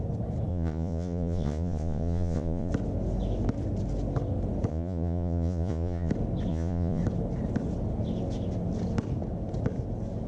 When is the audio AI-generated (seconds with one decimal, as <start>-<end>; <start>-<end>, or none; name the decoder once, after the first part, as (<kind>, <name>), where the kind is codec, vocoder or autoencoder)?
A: 0.5-2.7 (vocoder, Vocos); 4.7-6.1; 6.5-7.0